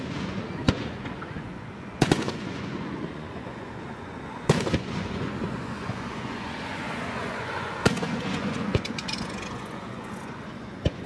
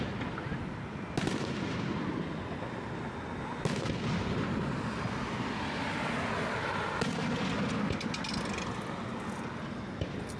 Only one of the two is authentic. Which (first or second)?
second